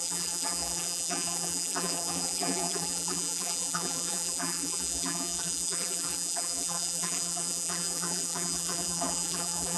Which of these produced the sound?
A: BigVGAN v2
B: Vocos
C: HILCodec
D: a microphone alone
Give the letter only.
A